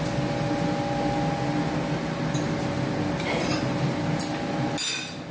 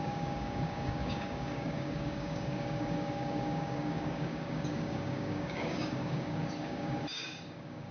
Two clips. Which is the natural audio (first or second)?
first